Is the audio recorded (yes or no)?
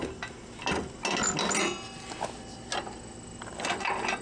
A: yes